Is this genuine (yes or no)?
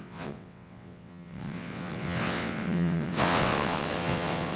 no